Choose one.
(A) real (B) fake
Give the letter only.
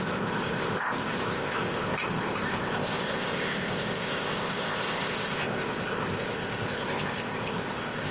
B